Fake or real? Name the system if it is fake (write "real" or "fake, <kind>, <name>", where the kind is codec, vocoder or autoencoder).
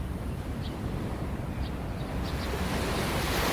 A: real